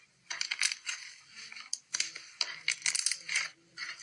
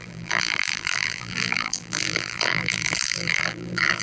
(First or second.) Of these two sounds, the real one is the first